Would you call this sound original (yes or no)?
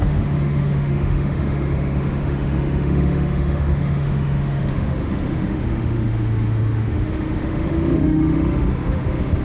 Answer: no